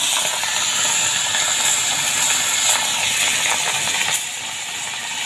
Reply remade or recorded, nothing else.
recorded